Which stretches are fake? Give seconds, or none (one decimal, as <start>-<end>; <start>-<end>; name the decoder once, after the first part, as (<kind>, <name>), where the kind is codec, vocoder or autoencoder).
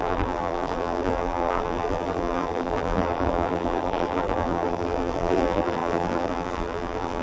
0.0-7.2 (vocoder, BigVGAN v2)